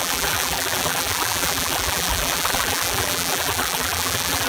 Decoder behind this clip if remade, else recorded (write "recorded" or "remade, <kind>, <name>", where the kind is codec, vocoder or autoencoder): remade, vocoder, BigVGAN v2